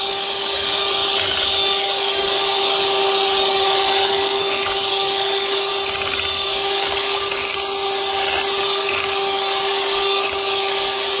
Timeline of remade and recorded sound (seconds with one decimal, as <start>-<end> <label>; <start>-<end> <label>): 0.0-5.7 remade; 5.7-6.3 recorded; 6.3-7.4 remade; 7.4-8.6 recorded; 8.6-11.2 remade